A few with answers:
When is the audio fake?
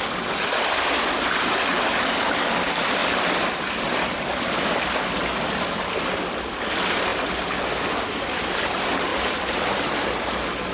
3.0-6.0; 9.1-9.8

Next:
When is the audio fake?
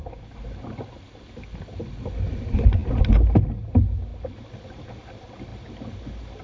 none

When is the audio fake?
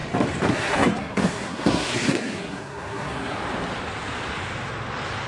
0.5-3.4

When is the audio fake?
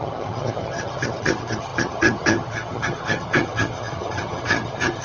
0.0-5.0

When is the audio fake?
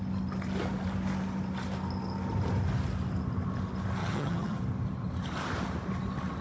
4.0-4.6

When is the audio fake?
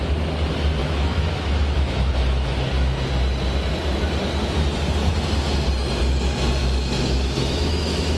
0.8-2.1; 6.6-8.2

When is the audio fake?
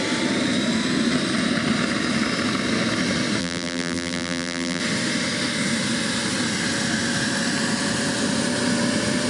3.4-4.8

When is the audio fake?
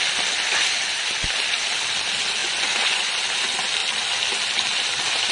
2.4-3.1